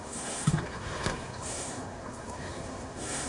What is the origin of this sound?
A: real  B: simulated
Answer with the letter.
B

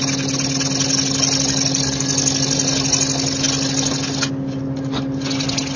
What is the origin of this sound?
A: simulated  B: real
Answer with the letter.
B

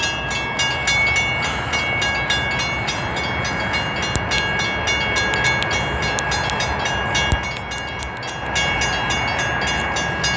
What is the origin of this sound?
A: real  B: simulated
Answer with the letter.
A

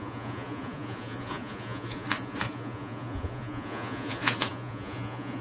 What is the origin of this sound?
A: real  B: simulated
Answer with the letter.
B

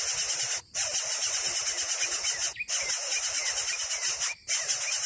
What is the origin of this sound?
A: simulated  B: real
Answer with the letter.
B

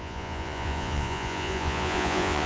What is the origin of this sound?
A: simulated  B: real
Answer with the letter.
A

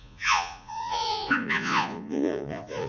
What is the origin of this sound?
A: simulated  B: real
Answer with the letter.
A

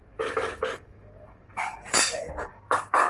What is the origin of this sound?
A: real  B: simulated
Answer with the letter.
B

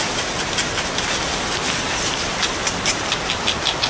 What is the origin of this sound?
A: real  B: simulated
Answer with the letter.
A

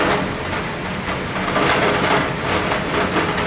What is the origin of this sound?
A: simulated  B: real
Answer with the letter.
B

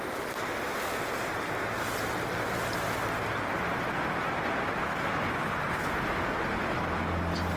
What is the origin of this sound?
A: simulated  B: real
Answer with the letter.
B